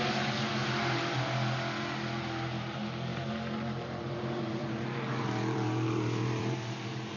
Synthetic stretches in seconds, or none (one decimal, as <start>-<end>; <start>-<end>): 3.1-7.2